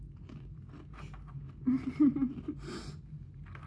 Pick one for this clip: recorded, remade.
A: recorded